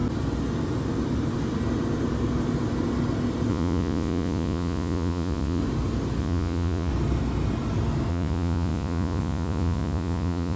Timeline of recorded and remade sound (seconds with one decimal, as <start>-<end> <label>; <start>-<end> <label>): 0.0-3.5 recorded; 3.5-5.6 remade; 5.6-6.2 recorded; 6.2-6.9 remade; 6.9-8.1 recorded; 8.1-10.6 remade